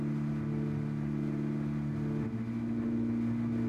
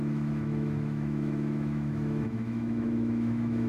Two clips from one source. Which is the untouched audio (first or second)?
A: first